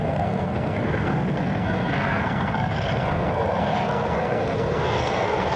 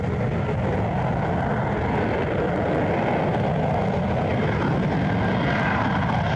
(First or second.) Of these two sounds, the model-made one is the first